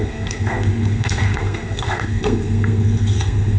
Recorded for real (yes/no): no